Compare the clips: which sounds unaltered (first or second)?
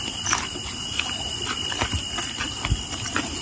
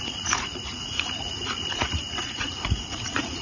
first